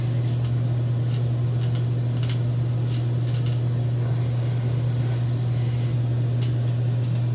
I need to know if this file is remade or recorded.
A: recorded